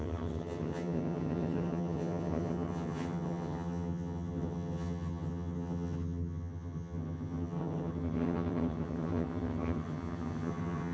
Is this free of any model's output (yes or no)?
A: no